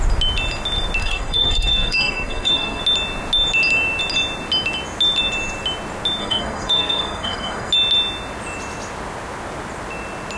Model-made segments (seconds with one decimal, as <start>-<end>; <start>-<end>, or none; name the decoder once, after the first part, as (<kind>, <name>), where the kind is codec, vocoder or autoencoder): 1.0-2.8 (codec, SNAC); 6.2-7.7